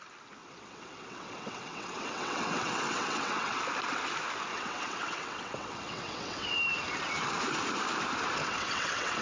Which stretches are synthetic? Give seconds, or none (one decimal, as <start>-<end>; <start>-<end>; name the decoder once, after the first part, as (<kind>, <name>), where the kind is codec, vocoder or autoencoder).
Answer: 0.4-3.6 (vocoder, WaveNeXt); 4.5-6.6; 8.4-9.2

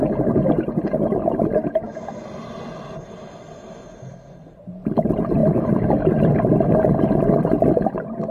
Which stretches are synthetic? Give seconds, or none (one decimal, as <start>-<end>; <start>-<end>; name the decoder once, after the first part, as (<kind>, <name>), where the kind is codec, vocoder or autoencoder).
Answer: none

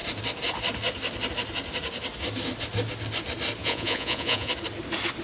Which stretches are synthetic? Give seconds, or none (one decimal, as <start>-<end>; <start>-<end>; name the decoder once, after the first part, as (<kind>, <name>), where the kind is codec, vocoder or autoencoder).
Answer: 3.6-4.5 (vocoder, Vocos)

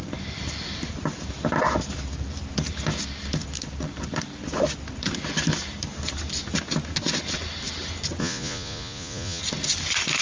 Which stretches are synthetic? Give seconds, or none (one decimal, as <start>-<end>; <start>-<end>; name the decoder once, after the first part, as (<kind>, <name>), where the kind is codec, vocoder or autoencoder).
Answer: 8.2-9.4 (vocoder, Vocos)

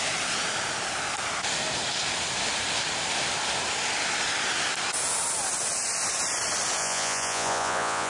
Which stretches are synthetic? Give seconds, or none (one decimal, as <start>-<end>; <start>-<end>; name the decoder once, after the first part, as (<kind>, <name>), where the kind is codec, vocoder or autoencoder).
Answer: 6.8-8.1 (vocoder, Vocos)

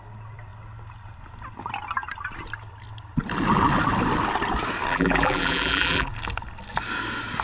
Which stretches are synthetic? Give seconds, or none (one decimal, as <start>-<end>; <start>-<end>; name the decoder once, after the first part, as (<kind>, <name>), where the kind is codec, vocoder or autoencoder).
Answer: 4.9-6.1 (vocoder, BigVGAN v2)

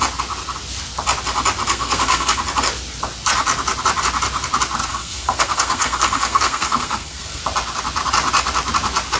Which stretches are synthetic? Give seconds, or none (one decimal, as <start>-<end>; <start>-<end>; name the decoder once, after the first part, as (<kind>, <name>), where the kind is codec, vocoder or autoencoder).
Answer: 1.7-2.4 (codec, SNAC); 4.9-7.4